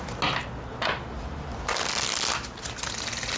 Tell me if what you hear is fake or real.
real